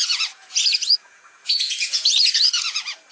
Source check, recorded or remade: remade